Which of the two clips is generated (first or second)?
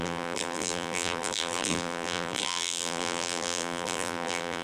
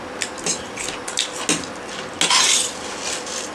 first